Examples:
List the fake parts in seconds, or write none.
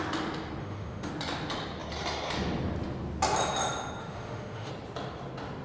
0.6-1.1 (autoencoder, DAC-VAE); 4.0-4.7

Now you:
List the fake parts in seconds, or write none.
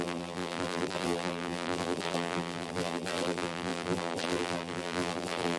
0.0-5.6 (vocoder, BigVGAN v2)